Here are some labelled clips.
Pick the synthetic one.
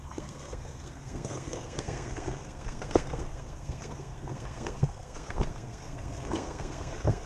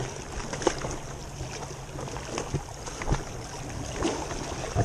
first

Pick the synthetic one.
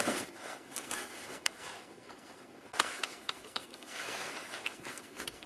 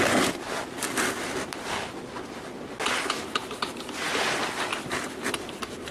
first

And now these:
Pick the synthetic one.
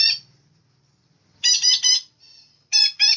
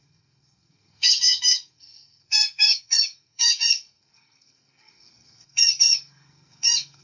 second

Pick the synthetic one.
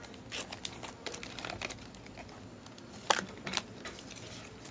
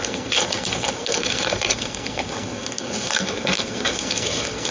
second